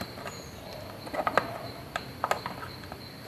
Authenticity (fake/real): real